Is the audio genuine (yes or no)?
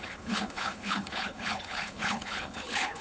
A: no